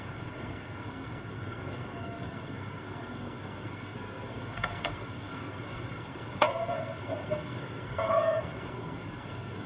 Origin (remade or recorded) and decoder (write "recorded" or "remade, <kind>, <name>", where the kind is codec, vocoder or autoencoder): remade, codec, SNAC